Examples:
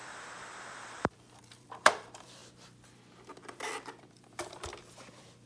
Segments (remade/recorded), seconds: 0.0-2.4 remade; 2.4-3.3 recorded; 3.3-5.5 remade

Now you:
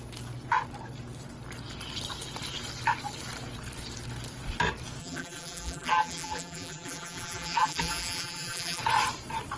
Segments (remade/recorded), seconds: 0.0-5.0 recorded; 5.0-8.8 remade; 8.8-9.6 recorded

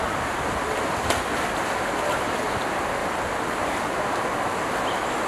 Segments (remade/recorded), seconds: 0.0-3.0 recorded; 3.0-3.6 remade; 3.6-5.3 recorded

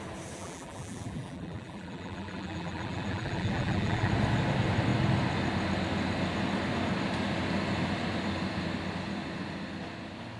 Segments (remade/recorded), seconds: 0.0-0.4 recorded; 0.4-4.1 remade; 4.1-10.4 recorded

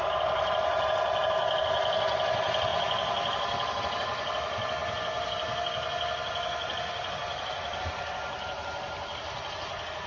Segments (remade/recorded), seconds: 0.0-10.1 recorded

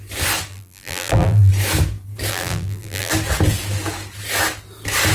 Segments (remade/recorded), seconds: 0.0-0.5 recorded; 0.5-1.5 remade; 1.5-2.3 recorded; 2.3-3.1 remade; 3.1-5.1 recorded

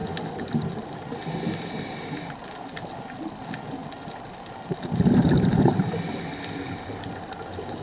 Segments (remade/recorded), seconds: 0.0-1.0 remade; 1.0-7.8 recorded